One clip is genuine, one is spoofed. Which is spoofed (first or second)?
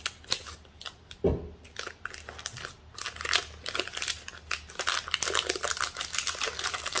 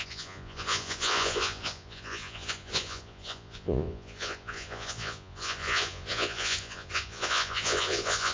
second